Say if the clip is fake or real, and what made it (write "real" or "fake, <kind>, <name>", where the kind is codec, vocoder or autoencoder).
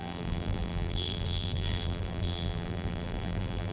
fake, vocoder, BigVGAN v2